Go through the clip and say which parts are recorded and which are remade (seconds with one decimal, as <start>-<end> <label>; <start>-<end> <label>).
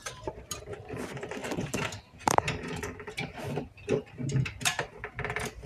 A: 0.0-5.7 remade